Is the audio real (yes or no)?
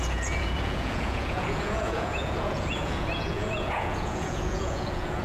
no